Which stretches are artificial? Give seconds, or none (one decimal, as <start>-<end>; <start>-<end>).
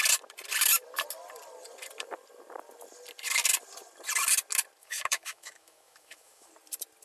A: 4.8-6.5